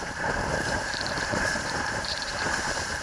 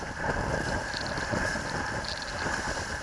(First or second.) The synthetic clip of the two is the first